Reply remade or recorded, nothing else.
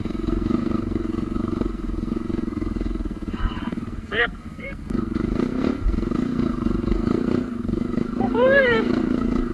remade